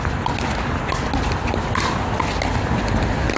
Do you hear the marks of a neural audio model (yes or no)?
no